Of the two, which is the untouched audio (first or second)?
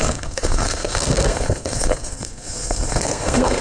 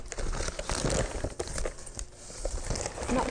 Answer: second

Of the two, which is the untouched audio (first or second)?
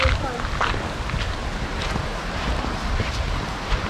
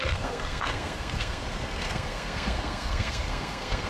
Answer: first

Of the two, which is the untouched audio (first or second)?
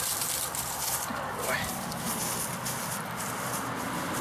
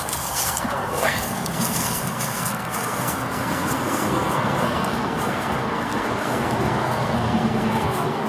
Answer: first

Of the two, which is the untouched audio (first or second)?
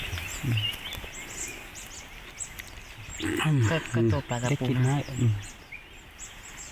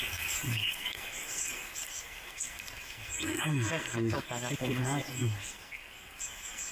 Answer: first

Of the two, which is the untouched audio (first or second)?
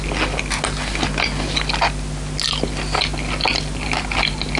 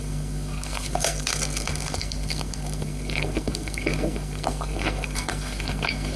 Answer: first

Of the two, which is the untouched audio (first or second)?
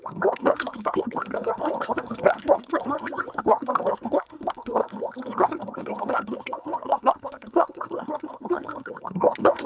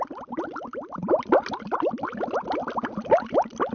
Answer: second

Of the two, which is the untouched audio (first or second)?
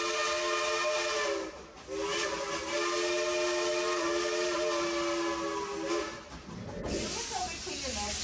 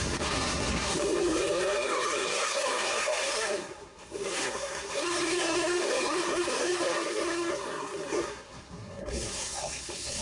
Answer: first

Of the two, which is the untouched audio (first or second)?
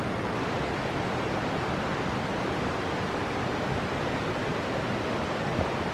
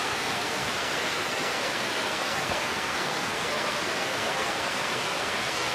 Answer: first